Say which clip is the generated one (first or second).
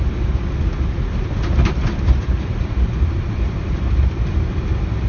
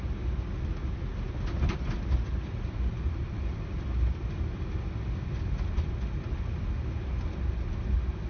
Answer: first